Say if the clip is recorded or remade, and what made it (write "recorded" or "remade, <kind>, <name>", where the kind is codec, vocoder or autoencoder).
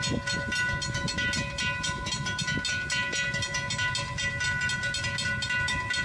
recorded